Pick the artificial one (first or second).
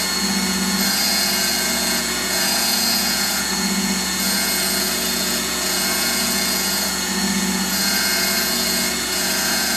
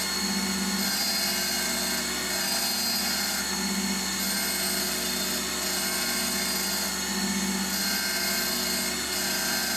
first